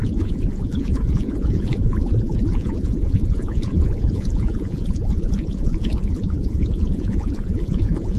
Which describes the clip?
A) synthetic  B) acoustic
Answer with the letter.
A